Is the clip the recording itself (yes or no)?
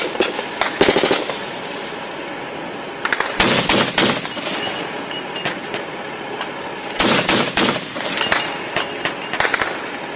yes